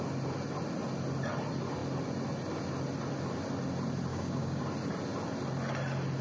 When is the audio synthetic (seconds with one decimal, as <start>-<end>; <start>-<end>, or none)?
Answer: 4.1-4.6

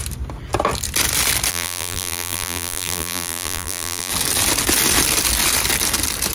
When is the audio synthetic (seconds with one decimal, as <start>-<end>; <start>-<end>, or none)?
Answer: 1.5-4.1

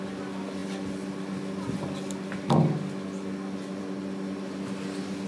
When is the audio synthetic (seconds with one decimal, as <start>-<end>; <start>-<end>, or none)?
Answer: none

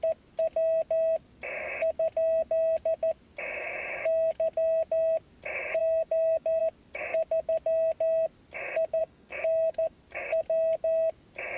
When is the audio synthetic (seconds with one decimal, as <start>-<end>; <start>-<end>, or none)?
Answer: 5.8-6.6; 9.0-10.0

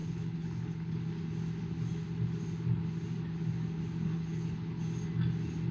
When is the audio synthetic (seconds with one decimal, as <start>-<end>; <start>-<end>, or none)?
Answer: 0.0-1.0; 4.1-4.8

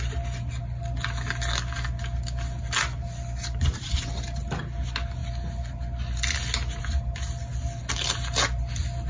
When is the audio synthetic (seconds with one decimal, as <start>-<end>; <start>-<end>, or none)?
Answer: none

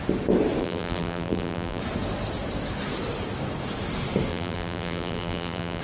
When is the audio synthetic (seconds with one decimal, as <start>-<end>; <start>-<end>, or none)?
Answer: 0.6-1.8; 4.3-5.8